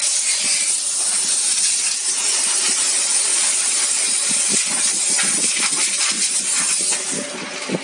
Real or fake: real